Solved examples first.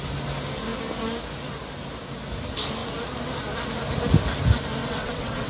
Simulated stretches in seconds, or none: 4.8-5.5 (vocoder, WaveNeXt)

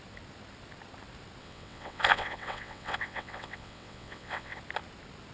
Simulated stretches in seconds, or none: 1.4-4.6 (vocoder, WaveNeXt)